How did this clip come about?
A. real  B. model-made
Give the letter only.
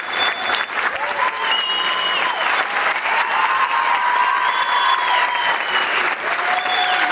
A